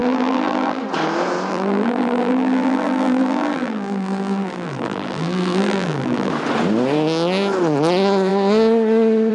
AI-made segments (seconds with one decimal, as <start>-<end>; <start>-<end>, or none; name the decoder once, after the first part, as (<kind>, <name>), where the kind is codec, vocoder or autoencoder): 0.0-0.8 (vocoder, BigVGAN v2); 1.5-6.3